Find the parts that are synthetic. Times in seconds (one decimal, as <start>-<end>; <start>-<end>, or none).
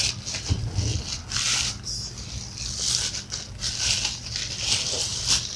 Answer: none